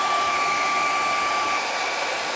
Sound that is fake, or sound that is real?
fake